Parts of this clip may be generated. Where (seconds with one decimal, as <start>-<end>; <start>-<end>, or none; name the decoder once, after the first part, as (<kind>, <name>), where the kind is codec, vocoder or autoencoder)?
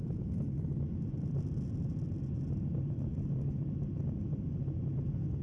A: none